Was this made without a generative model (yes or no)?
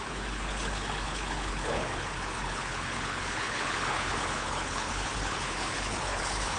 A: no